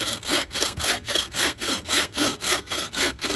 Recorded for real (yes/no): no